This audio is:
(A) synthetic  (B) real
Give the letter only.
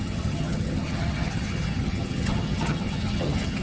A